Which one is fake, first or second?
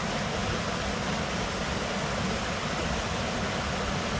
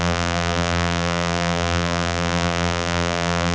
second